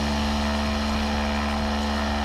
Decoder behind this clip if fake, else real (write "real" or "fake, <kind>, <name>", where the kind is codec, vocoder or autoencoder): real